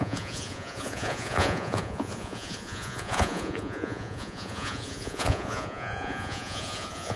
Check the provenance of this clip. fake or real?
fake